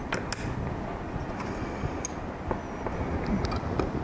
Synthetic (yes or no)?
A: no